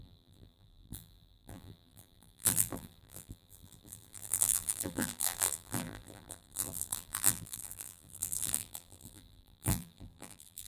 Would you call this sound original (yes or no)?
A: no